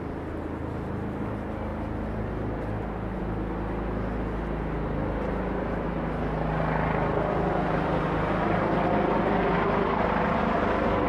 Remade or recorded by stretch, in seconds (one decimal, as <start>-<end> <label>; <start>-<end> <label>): 0.0-11.1 recorded